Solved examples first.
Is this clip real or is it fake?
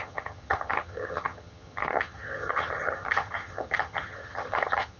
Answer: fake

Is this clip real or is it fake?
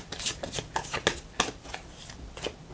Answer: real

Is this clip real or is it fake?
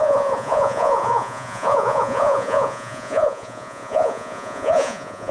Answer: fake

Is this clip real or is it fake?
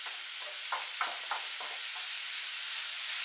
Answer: real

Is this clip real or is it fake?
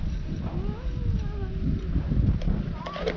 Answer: real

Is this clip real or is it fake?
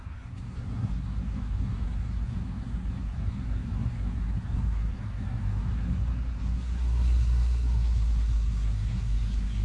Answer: fake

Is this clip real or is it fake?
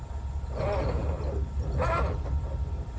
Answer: real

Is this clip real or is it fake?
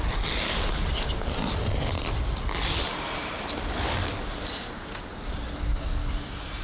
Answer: real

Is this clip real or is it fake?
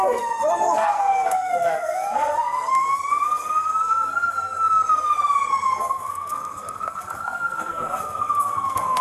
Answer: fake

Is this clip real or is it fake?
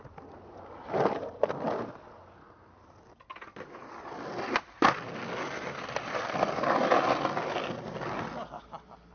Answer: real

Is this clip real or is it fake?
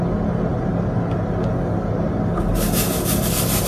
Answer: real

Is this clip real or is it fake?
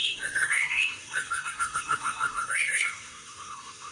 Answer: fake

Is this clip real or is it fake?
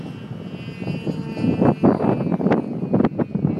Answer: real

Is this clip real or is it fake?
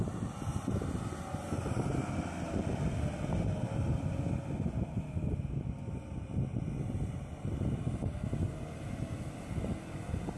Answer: real